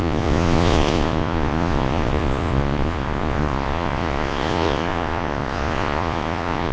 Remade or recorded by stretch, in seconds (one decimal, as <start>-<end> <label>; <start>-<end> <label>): 0.0-6.7 remade